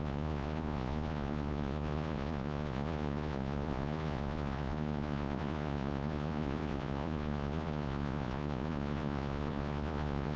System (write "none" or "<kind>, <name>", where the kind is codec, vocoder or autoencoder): vocoder, Vocos